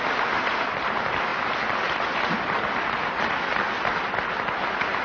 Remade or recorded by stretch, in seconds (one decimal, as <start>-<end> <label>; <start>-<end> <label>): 0.0-5.0 recorded